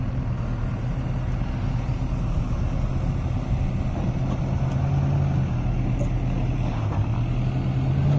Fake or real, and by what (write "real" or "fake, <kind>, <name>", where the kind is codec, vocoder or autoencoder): real